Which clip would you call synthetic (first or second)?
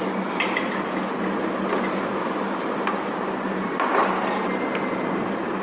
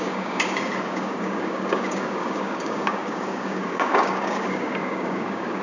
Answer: second